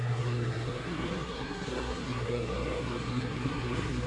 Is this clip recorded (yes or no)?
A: no